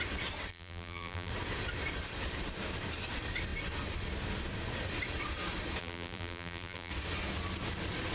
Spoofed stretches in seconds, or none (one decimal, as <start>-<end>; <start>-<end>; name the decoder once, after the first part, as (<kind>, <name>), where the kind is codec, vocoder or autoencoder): 0.5-1.3 (vocoder, BigVGAN v2); 5.8-6.9